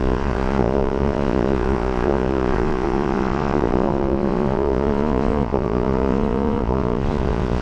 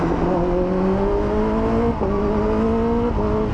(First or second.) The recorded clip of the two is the second